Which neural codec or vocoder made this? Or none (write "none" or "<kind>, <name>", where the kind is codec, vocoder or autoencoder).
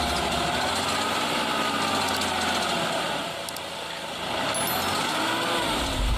none